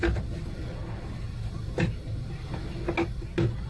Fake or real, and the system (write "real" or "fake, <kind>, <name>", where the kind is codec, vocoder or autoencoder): real